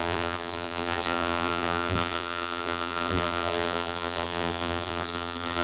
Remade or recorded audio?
remade